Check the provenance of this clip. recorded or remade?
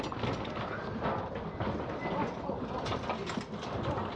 recorded